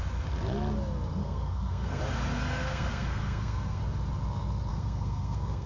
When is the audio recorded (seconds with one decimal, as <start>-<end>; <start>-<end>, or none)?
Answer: 0.0-1.2; 2.0-2.6; 3.8-4.7